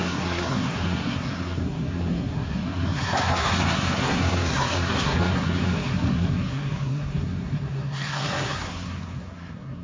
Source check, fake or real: fake